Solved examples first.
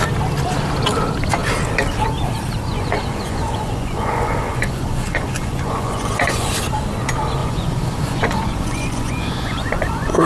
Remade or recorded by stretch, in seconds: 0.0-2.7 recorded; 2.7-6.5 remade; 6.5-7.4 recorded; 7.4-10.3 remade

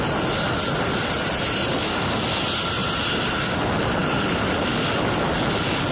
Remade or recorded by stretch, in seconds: 0.0-5.9 recorded